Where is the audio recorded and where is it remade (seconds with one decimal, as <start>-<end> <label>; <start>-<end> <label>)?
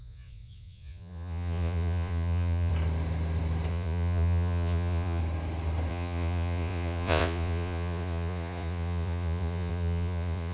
0.0-2.7 remade; 2.7-3.7 recorded; 3.7-5.2 remade; 5.2-5.9 recorded; 5.9-10.5 remade